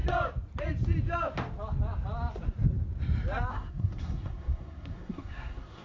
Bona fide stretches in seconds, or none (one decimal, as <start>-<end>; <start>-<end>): 0.0-3.5

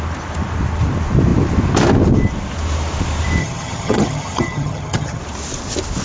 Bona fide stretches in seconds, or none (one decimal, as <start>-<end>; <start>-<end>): 0.0-3.4; 5.2-6.0

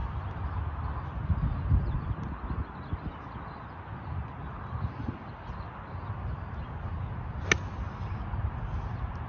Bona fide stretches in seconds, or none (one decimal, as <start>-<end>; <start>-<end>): 0.0-9.3

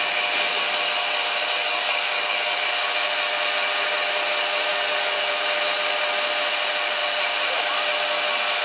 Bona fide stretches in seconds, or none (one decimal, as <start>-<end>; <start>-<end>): 0.0-1.6; 2.7-4.7; 5.3-8.6

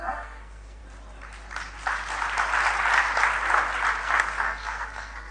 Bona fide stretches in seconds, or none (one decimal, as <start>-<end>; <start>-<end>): 0.8-4.0

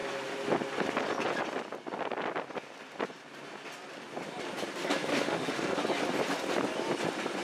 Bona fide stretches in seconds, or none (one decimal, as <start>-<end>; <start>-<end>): 0.0-5.1; 5.8-7.4

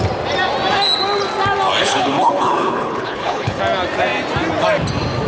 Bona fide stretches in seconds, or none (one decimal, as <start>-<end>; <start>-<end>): 0.0-1.8; 3.6-5.3

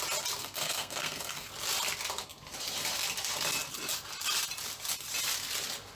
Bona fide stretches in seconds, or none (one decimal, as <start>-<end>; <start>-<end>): 0.0-0.4; 1.5-6.0